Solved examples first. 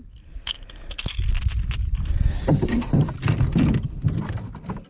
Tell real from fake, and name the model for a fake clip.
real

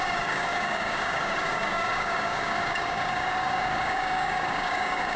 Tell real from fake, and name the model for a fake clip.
fake, codec, DAC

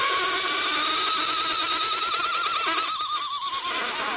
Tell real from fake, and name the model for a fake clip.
real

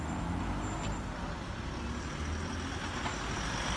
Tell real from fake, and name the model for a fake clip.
real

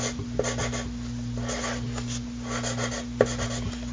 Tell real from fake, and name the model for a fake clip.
real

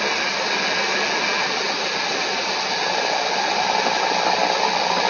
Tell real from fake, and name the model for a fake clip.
real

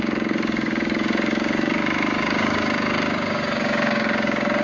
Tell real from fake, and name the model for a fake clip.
fake, codec, DAC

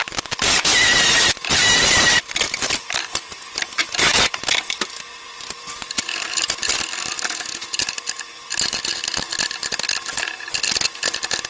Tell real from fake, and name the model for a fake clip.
real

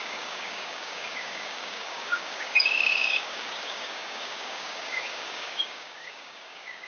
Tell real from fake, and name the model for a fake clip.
fake, codec, DAC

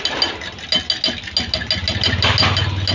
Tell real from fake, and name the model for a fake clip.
real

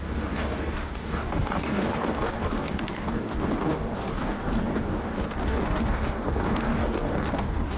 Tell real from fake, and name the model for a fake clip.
fake, codec, DAC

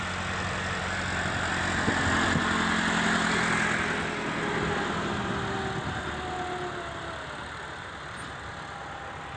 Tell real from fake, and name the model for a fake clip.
real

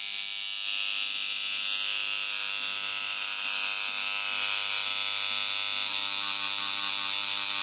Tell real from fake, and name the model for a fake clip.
real